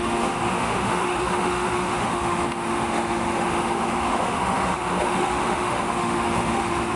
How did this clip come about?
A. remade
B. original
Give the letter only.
A